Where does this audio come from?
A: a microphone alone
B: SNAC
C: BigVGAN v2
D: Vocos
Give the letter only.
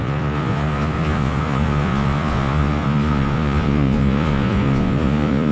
D